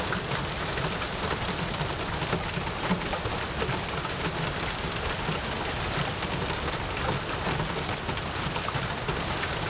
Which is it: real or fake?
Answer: real